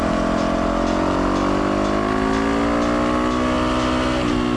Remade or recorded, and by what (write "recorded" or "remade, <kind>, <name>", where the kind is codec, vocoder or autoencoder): recorded